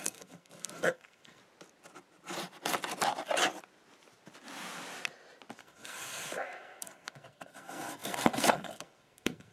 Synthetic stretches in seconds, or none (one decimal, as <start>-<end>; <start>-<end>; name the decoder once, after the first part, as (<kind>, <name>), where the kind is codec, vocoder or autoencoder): 0.0-1.4 (codec, SNAC); 5.6-9.5